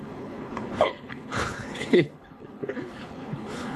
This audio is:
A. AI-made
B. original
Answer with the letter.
A